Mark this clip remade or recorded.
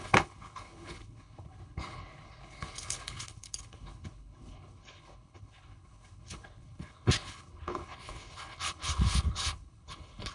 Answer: remade